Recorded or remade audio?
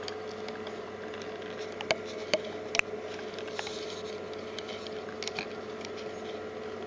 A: recorded